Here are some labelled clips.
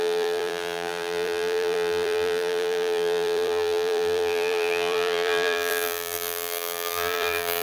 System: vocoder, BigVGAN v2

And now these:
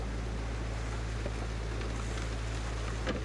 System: none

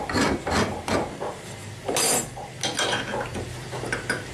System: none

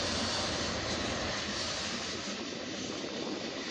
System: none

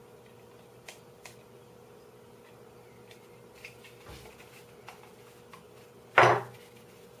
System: none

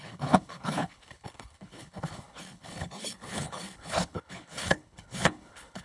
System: codec, HILCodec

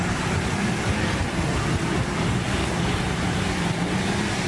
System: none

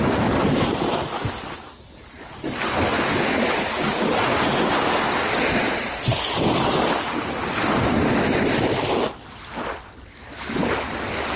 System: none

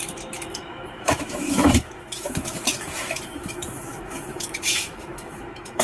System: autoencoder, DAC-VAE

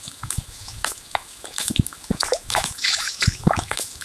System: autoencoder, DAC-VAE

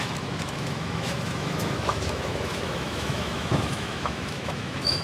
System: autoencoder, DAC-VAE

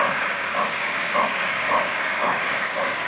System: codec, DAC